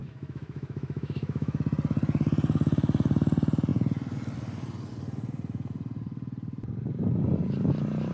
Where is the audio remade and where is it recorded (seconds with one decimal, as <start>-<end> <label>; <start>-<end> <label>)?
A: 0.0-1.6 remade; 1.6-8.1 recorded